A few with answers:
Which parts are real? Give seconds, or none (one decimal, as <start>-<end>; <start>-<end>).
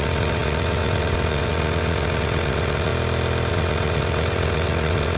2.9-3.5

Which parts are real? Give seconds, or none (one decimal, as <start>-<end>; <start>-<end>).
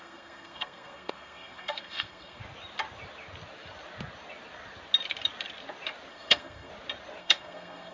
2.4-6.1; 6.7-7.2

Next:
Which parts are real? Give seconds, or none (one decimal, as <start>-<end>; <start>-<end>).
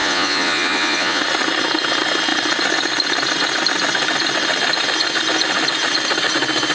1.2-6.7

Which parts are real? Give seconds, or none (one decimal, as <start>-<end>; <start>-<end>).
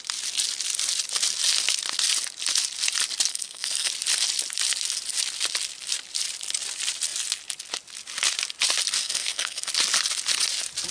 0.0-3.3; 3.9-9.0; 9.7-10.9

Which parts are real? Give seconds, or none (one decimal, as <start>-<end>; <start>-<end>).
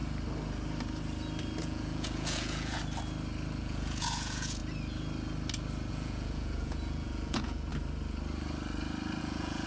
0.0-1.6; 2.8-3.6; 4.6-5.9; 7.7-9.2